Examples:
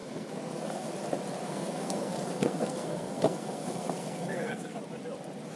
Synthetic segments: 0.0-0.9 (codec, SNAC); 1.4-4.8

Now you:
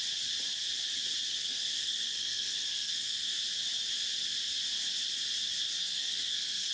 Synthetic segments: 1.3-3.4 (codec, SNAC); 5.8-6.7